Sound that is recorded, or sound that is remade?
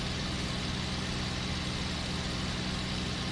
recorded